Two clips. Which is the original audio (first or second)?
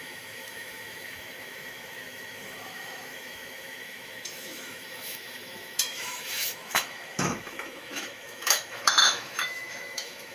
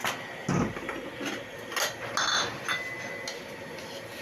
second